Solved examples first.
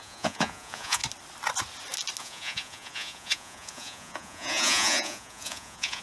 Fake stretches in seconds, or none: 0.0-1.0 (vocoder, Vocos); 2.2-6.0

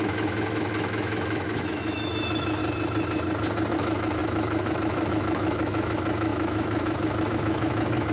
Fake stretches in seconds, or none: 0.0-2.6 (autoencoder, DAC-VAE); 3.7-8.1

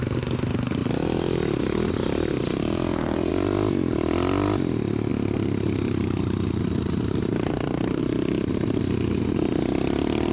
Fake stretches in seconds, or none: 5.1-8.0 (vocoder, BigVGAN v2)

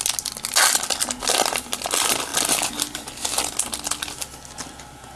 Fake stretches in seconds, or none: none

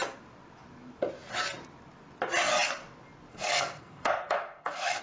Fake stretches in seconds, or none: 3.3-5.0 (codec, SNAC)